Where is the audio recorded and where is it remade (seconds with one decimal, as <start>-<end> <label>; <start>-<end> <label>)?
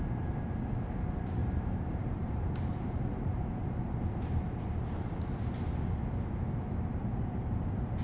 0.0-1.4 recorded; 1.4-5.4 remade; 5.4-7.0 recorded; 7.0-8.0 remade